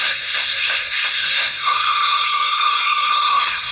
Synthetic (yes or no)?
yes